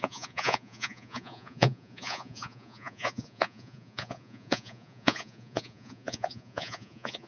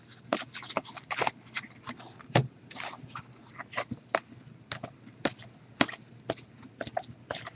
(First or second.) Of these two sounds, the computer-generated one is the first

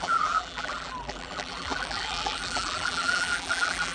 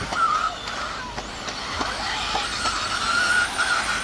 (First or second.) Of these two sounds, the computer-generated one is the first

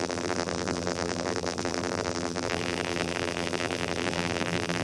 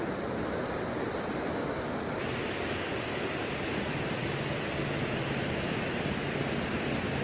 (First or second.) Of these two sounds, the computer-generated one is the first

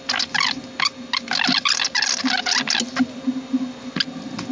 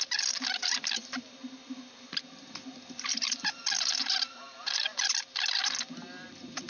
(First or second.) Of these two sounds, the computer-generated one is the second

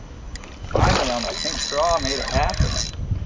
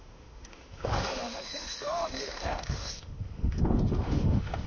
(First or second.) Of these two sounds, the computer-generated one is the second